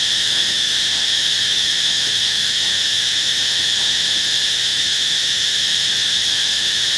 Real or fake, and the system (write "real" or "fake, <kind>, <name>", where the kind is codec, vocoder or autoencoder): fake, autoencoder, DAC-VAE